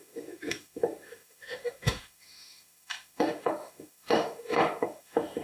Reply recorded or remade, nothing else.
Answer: remade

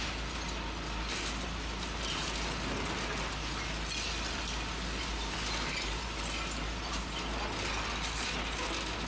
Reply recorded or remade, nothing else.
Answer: recorded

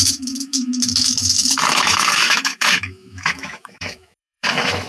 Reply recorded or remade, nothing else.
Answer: remade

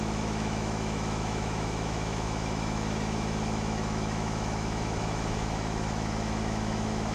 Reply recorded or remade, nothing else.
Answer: remade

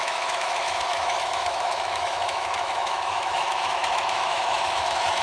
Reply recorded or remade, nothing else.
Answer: remade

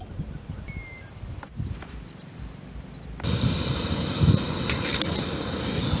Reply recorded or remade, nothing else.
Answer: recorded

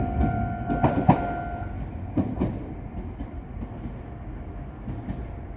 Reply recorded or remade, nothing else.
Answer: recorded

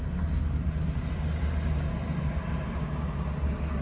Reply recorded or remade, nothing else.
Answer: recorded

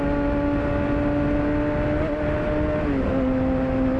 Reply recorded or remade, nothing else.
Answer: recorded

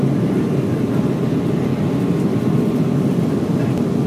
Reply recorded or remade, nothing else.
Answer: recorded